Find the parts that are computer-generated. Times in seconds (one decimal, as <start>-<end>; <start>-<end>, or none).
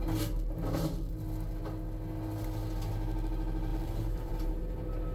3.7-4.6